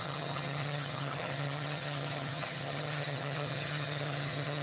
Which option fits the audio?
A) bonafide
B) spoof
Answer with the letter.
B